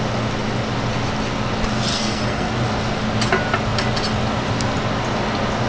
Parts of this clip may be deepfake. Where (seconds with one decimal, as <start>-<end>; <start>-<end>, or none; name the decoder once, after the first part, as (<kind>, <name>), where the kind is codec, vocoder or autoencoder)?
1.9-2.5 (codec, SNAC)